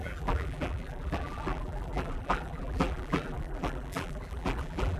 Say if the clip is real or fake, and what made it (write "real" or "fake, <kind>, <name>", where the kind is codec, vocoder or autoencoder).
fake, vocoder, BigVGAN v2